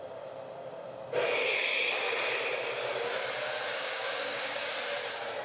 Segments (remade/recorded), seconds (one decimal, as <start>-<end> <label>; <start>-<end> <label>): 0.0-1.6 recorded; 1.6-2.1 remade; 2.1-3.7 recorded; 3.7-4.7 remade; 4.7-5.4 recorded